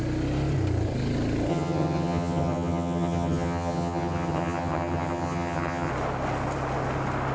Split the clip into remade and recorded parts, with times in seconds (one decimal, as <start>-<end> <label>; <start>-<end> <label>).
0.0-1.5 recorded; 1.5-5.9 remade; 5.9-7.3 recorded